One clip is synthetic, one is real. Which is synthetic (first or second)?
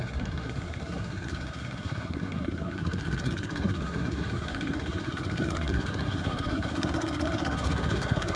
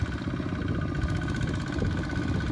first